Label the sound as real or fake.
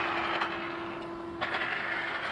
real